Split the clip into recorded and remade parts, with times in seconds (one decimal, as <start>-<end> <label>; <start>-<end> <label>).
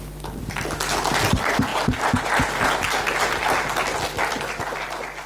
0.0-5.3 recorded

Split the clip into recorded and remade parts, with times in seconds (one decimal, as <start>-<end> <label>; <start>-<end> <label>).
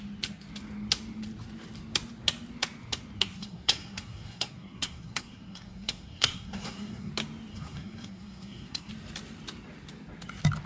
0.0-3.4 recorded; 3.4-7.1 remade; 7.1-7.5 recorded; 7.5-8.9 remade; 8.9-10.7 recorded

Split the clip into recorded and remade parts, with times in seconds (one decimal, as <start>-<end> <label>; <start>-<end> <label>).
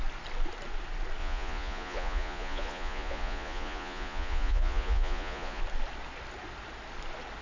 0.0-1.2 recorded; 1.2-5.6 remade; 5.6-7.4 recorded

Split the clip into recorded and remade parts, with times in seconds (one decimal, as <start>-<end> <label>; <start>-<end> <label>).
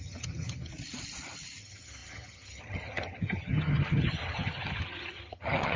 0.0-0.7 remade; 0.7-1.6 recorded; 1.6-5.8 remade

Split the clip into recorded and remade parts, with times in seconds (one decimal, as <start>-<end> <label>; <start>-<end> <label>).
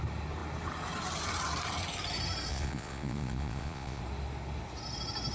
0.0-2.5 recorded; 2.5-4.0 remade; 4.0-5.3 recorded